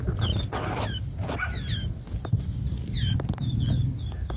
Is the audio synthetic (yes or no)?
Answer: no